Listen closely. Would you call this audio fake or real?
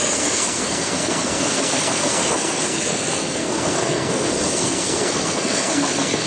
fake